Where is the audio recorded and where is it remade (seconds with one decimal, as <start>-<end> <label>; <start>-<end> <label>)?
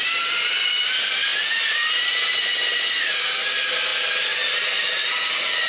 0.0-5.7 recorded